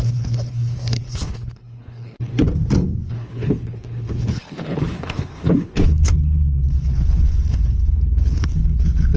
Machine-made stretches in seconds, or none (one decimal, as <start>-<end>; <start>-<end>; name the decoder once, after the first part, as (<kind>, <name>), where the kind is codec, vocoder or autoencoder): 0.0-2.3 (codec, HILCodec); 3.1-9.2